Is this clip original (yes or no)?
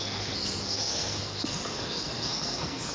no